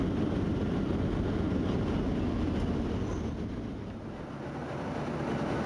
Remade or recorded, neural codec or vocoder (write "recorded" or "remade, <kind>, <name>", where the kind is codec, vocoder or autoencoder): recorded